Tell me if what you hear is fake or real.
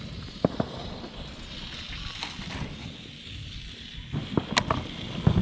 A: real